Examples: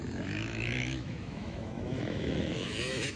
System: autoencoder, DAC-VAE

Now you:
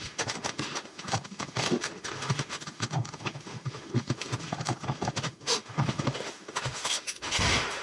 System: autoencoder, DAC-VAE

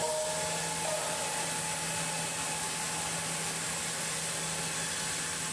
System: none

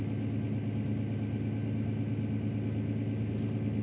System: none